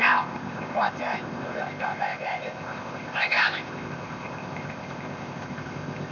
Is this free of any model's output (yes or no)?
no